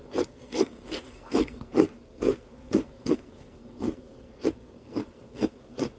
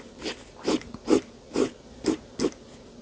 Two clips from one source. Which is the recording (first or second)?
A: second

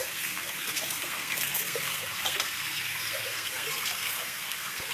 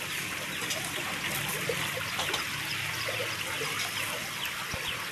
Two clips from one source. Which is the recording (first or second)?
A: second